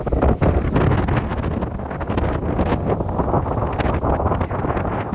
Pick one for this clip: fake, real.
real